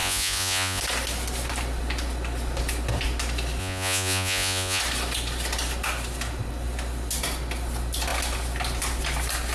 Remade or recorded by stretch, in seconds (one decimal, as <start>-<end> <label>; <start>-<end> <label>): 0.0-0.8 remade; 0.8-3.6 recorded; 3.6-4.8 remade; 4.8-9.5 recorded

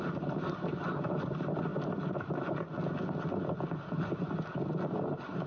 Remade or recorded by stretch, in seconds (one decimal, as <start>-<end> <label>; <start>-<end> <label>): 0.0-2.7 remade; 2.7-4.7 recorded; 4.7-5.5 remade

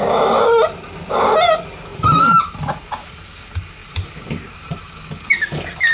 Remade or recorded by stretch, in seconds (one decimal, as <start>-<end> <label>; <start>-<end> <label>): 0.0-1.9 recorded; 1.9-2.4 remade; 2.4-3.8 recorded; 3.8-4.8 remade; 4.8-5.9 recorded

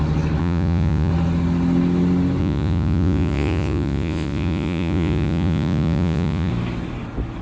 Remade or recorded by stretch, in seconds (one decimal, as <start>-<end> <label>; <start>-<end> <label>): 0.0-0.4 recorded; 0.4-1.1 remade; 1.1-2.4 recorded; 2.4-6.5 remade; 6.5-7.4 recorded